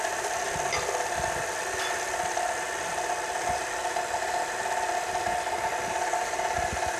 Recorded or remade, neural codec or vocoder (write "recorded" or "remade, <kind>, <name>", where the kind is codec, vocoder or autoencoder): recorded